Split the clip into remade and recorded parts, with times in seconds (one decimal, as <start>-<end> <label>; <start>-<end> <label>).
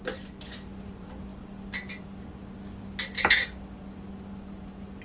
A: 0.0-5.0 recorded